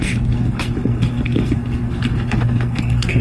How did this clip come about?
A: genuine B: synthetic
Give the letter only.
B